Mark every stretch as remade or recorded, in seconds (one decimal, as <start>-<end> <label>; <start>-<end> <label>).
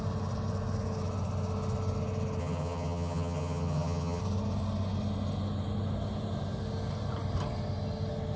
0.0-2.4 recorded; 2.4-4.2 remade; 4.2-8.4 recorded